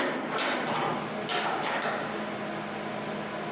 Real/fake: real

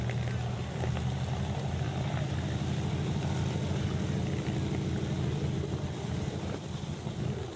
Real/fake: real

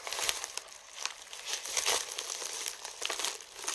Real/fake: real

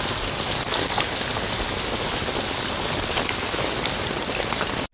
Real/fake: real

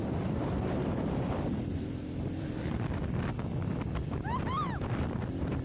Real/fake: fake